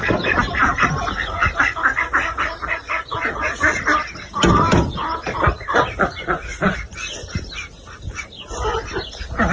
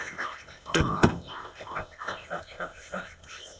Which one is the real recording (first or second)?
first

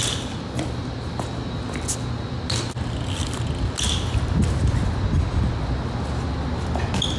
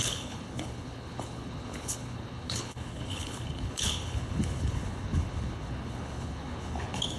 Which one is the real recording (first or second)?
first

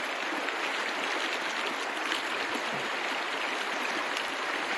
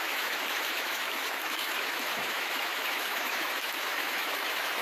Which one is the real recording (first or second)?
first